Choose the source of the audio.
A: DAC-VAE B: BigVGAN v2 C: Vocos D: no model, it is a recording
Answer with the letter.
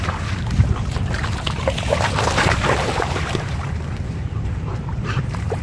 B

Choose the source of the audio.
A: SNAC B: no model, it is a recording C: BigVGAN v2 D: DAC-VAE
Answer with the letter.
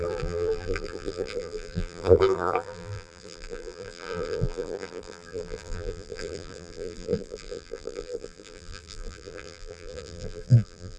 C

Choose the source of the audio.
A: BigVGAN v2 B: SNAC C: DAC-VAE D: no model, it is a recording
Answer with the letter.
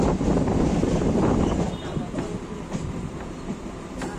D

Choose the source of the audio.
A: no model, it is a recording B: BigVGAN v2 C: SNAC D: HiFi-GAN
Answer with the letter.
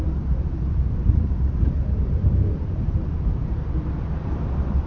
B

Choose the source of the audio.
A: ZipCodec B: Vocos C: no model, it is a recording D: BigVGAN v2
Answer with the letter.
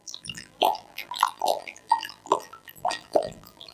D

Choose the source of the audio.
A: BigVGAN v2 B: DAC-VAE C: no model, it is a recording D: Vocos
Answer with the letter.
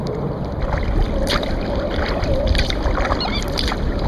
A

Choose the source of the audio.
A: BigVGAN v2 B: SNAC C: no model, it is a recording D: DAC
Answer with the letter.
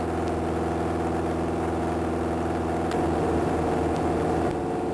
A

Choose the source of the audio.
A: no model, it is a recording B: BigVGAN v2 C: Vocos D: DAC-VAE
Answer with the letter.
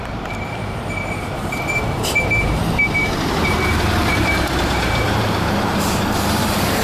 B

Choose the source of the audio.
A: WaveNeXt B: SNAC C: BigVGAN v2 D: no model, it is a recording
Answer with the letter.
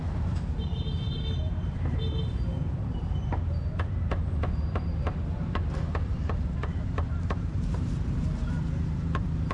C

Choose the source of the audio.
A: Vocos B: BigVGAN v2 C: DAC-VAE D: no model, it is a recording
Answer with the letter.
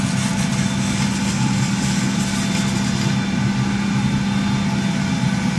D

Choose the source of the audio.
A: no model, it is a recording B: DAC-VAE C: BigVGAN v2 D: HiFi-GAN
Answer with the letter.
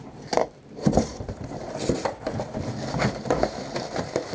C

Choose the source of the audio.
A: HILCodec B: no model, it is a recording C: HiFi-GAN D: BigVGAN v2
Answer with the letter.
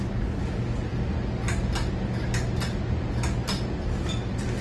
B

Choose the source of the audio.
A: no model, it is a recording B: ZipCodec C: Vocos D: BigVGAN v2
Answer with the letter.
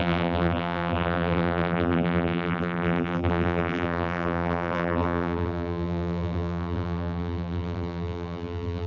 D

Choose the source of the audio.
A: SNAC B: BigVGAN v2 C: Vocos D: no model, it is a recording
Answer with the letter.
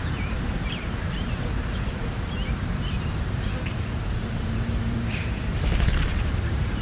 B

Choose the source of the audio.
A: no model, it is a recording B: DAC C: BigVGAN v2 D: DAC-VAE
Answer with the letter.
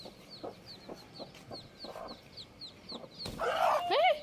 A